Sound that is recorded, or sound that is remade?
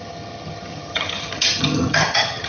remade